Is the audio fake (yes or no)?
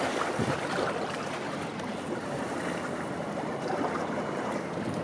no